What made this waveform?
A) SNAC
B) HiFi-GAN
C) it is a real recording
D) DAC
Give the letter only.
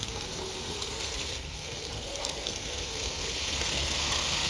A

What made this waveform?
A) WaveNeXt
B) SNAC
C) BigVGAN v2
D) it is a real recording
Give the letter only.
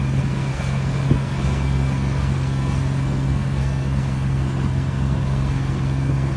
B